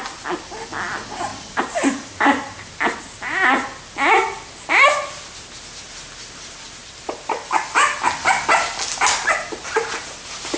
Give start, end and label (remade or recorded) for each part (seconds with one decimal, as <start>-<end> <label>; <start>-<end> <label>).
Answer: 0.0-1.3 recorded; 1.3-3.0 remade; 3.0-6.8 recorded; 6.8-7.6 remade; 7.6-10.6 recorded